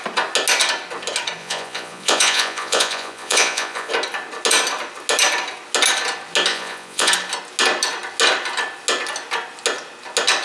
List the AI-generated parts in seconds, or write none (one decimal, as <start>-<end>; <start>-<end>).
1.4-3.9; 6.5-7.1